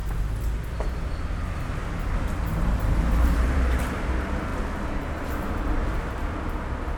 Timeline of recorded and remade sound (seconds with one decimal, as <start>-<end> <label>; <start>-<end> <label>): 0.0-2.5 recorded; 2.5-3.8 remade; 3.8-7.0 recorded